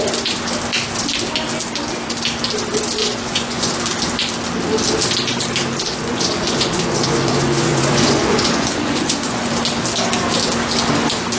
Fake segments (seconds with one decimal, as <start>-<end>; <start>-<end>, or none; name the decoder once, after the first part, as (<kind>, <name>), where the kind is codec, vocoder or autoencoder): 3.0-3.7 (vocoder, Vocos); 5.9-9.5